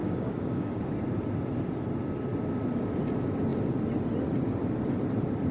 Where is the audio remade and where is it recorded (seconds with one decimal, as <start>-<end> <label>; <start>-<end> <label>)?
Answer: 0.0-0.8 remade; 0.8-5.5 recorded